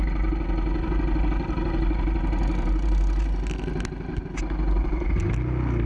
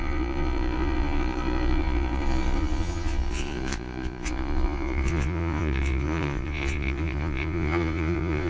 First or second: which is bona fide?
first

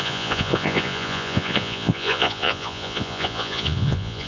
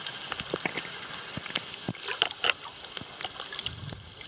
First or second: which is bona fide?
second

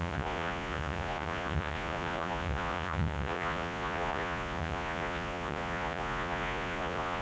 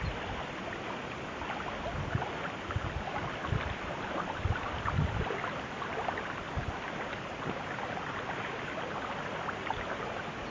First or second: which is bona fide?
second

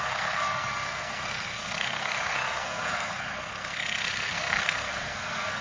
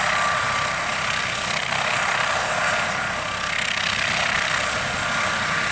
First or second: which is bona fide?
second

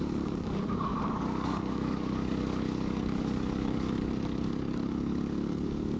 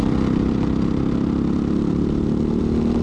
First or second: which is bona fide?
second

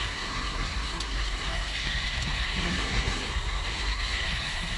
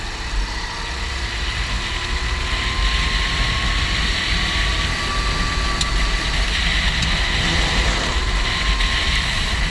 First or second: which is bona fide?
second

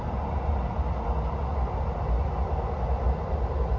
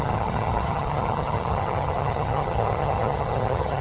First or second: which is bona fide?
first